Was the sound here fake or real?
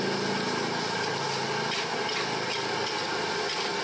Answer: real